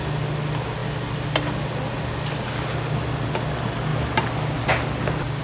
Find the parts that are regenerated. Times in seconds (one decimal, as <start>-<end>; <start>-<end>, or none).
none